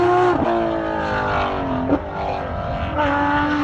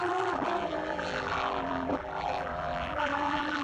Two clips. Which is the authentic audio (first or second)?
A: first